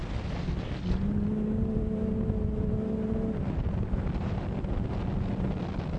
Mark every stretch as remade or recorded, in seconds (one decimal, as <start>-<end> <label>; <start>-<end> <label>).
0.0-6.0 recorded